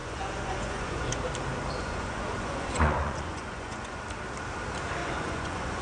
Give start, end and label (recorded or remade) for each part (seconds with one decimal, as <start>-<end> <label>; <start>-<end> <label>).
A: 0.0-1.2 remade; 1.2-1.8 recorded; 1.8-4.0 remade; 4.0-5.0 recorded; 5.0-5.8 remade